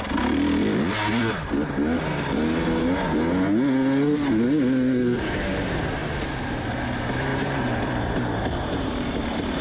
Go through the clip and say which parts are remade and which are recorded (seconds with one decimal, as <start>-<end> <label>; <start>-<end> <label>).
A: 0.0-7.3 recorded; 7.3-9.6 remade